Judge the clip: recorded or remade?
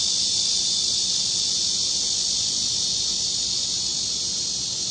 recorded